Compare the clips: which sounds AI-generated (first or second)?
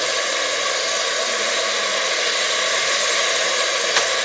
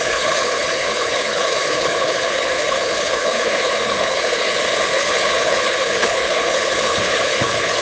second